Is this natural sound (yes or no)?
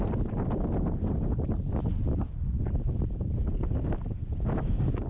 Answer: no